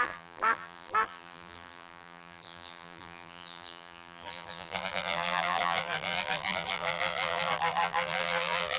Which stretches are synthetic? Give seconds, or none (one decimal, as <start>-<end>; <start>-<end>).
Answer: 0.0-8.8